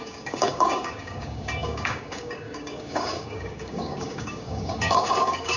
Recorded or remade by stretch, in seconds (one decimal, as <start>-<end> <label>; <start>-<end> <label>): 0.0-5.6 remade